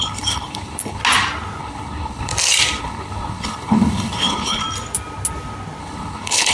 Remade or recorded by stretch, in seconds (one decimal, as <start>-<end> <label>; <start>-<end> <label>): 0.0-1.0 remade; 1.0-1.6 recorded; 1.6-2.3 remade; 2.3-2.8 recorded; 2.8-4.6 remade; 4.6-5.8 recorded; 5.8-6.5 remade